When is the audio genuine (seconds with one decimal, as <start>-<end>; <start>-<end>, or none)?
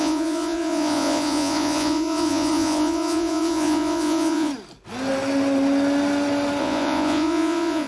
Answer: 4.5-6.6